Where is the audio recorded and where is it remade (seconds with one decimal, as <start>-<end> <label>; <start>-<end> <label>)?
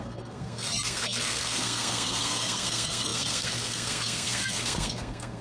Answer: 0.0-5.4 remade